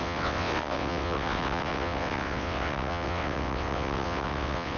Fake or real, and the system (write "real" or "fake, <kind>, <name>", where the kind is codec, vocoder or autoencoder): fake, vocoder, WaveNeXt